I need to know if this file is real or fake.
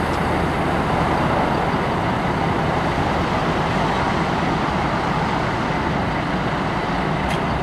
real